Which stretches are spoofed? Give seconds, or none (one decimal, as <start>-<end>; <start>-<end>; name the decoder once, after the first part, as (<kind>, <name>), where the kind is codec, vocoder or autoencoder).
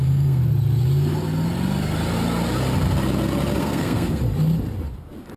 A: 0.0-0.4 (codec, SNAC); 3.6-4.2